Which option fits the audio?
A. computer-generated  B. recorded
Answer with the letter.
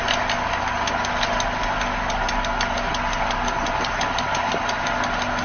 B